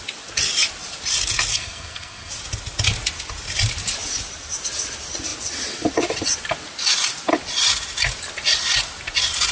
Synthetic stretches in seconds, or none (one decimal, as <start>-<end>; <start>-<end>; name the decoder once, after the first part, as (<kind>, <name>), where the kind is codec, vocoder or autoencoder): 1.5-2.3 (codec, SNAC)